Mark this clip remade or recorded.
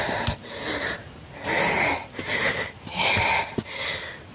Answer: recorded